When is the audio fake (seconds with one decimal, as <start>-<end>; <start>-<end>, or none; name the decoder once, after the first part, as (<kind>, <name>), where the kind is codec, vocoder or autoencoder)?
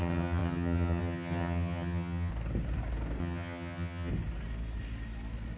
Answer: 0.0-2.3 (vocoder, HiFi-GAN); 3.2-4.1